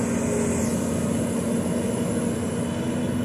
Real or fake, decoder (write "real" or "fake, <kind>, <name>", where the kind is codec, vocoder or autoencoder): real